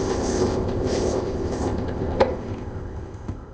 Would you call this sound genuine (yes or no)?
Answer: no